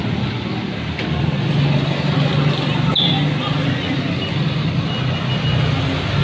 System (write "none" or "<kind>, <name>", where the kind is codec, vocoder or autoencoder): none